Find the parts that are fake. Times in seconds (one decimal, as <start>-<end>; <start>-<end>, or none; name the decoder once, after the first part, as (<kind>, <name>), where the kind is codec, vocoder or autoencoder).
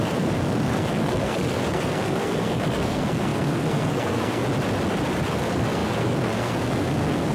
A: 0.0-4.4 (codec, SNAC); 5.3-7.3